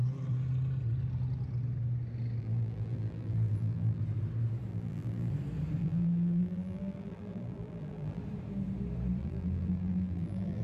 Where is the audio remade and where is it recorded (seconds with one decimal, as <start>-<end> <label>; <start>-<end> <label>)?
0.0-2.4 recorded; 2.4-4.0 remade; 4.0-4.7 recorded; 4.7-5.3 remade; 5.3-5.8 recorded; 5.8-8.2 remade; 8.2-9.2 recorded; 9.2-10.6 remade